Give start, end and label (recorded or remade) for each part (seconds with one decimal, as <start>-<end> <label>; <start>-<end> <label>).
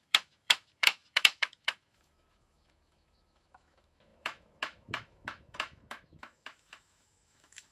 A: 0.0-7.7 remade